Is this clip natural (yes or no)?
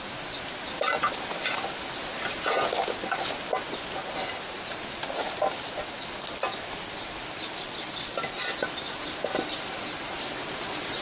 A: yes